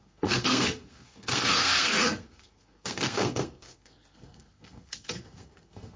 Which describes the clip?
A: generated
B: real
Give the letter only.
A